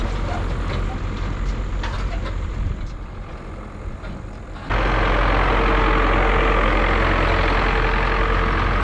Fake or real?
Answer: real